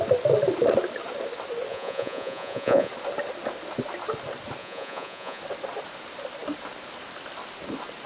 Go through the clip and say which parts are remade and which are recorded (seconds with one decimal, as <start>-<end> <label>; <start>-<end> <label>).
0.0-1.7 recorded; 1.7-2.9 remade; 2.9-4.6 recorded; 4.6-5.4 remade; 5.4-8.1 recorded